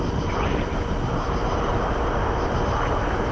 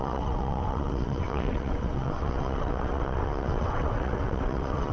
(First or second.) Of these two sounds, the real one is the first